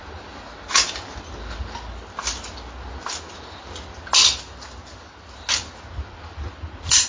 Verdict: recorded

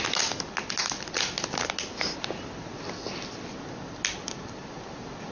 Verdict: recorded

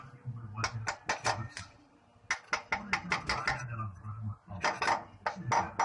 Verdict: recorded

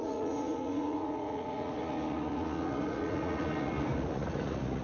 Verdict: remade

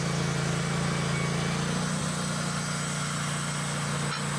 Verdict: recorded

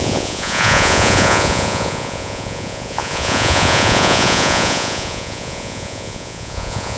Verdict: remade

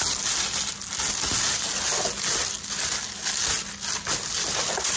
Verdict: recorded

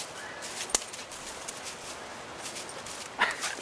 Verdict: recorded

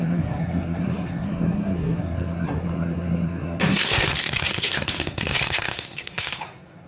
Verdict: remade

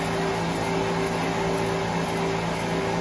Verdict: recorded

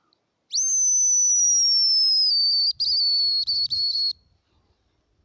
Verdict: recorded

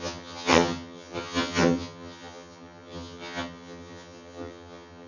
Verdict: remade